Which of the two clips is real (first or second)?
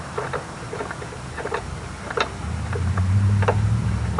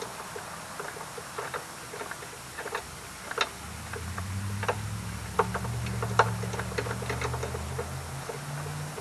second